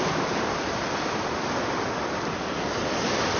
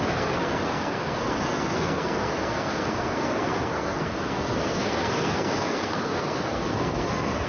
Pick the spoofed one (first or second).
second